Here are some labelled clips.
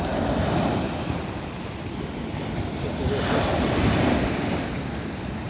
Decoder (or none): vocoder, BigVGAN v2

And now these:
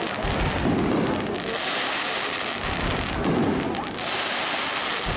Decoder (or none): vocoder, BigVGAN v2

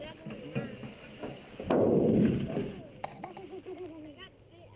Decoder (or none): none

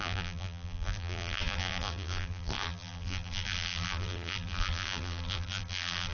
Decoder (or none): vocoder, BigVGAN v2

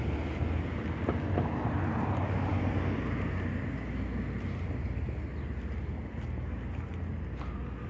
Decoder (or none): none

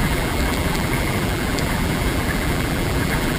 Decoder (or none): vocoder, BigVGAN v2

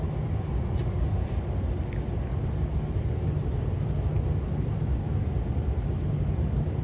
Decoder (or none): none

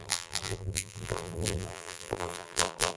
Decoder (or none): vocoder, BigVGAN v2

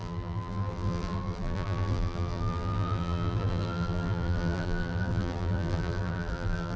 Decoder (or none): vocoder, BigVGAN v2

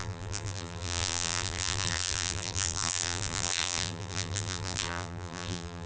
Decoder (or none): vocoder, BigVGAN v2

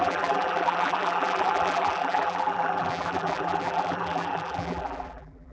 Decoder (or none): vocoder, BigVGAN v2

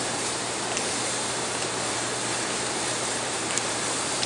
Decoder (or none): vocoder, BigVGAN v2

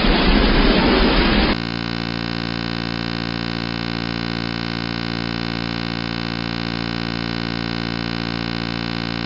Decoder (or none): none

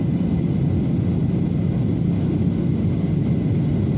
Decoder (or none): none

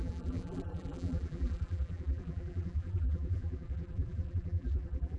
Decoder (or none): vocoder, BigVGAN v2